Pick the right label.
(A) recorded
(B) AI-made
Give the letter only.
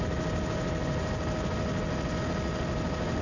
A